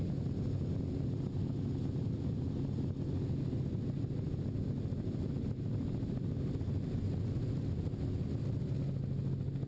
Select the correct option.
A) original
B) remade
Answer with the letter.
A